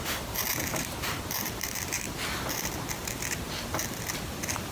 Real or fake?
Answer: real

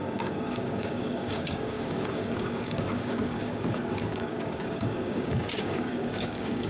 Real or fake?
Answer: fake